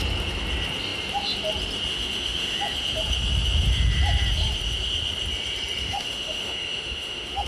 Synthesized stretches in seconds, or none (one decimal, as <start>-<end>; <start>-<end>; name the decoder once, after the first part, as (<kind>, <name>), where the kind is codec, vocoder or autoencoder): 1.9-2.6 (autoencoder, DAC-VAE); 5.8-7.5